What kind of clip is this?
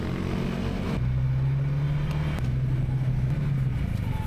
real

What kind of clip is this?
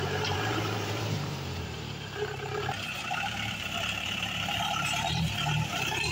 fake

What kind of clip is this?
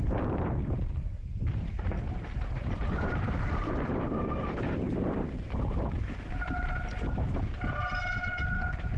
fake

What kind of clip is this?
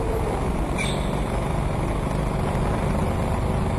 real